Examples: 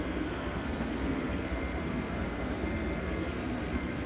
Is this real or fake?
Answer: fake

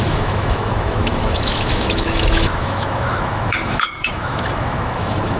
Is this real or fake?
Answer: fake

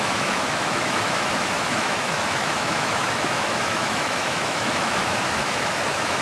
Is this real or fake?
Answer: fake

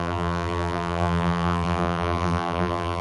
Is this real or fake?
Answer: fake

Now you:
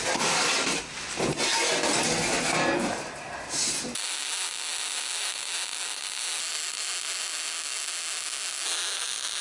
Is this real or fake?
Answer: real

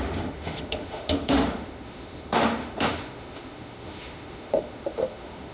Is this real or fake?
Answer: fake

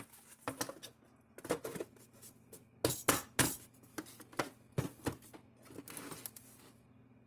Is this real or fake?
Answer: real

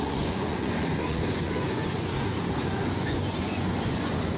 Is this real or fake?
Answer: fake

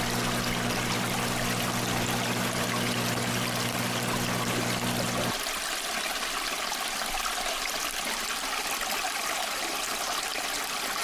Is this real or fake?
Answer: real